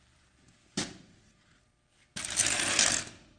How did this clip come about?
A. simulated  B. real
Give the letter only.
A